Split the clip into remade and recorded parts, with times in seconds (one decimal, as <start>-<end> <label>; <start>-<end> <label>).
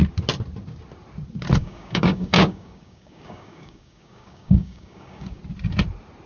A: 0.0-1.6 recorded; 1.6-5.4 remade; 5.4-6.3 recorded